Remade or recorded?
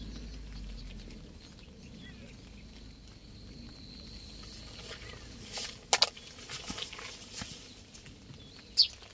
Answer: recorded